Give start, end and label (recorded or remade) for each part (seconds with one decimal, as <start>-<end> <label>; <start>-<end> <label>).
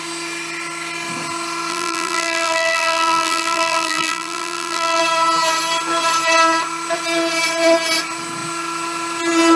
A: 0.0-1.7 recorded; 1.7-5.0 remade; 5.0-9.6 recorded